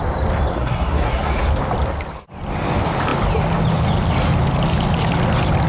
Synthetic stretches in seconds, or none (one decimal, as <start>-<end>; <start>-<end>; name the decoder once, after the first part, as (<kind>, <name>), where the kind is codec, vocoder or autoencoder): 0.5-1.3 (codec, SNAC)